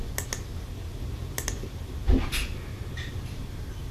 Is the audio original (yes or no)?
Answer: yes